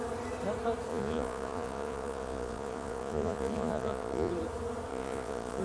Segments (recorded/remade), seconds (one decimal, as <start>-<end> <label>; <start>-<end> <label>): 0.0-0.9 recorded; 0.9-4.3 remade; 4.3-4.9 recorded; 4.9-5.6 remade